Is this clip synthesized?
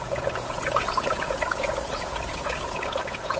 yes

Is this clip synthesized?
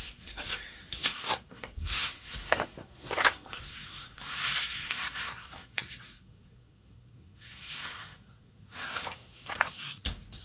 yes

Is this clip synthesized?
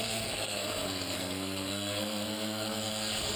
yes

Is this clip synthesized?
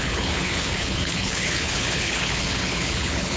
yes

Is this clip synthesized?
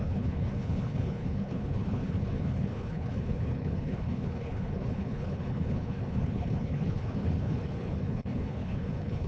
yes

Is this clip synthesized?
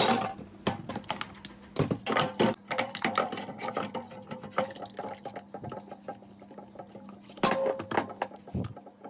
no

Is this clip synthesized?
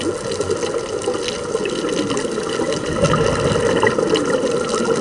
no